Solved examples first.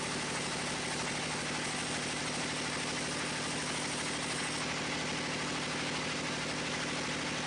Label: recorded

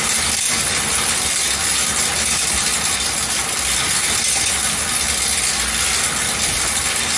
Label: recorded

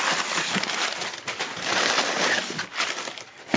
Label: recorded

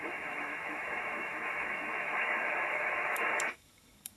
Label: remade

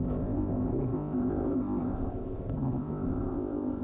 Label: remade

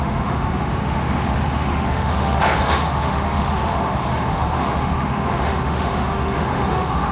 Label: remade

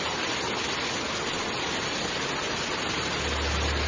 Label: recorded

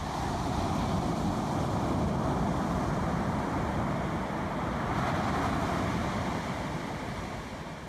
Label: recorded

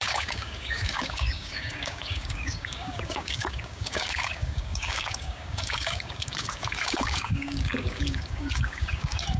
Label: remade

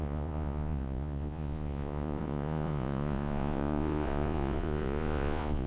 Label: remade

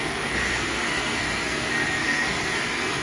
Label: remade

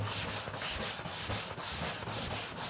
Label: recorded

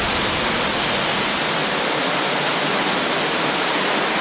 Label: recorded